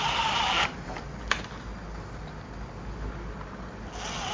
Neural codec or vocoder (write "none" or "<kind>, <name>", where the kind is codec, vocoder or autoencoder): none